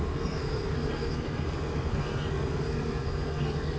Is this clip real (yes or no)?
no